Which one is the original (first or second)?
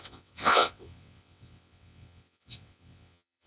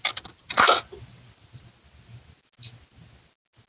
second